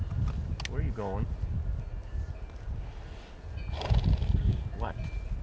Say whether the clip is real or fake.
real